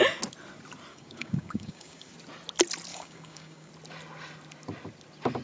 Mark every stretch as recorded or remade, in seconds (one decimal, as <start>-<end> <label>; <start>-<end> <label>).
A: 0.0-0.9 recorded; 0.9-2.1 remade; 2.1-2.9 recorded; 2.9-3.7 remade; 3.7-5.4 recorded